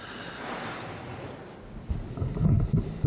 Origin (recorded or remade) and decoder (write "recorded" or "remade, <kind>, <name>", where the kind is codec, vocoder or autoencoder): recorded